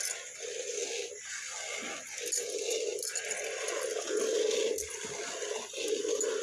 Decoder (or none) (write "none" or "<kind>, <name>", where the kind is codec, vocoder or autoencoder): none